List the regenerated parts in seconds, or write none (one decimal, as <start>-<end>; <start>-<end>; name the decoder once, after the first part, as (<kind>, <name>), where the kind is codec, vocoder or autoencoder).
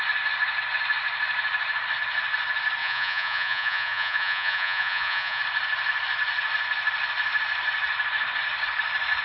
2.8-5.4 (vocoder, Vocos)